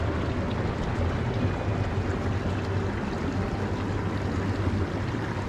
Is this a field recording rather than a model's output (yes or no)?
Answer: yes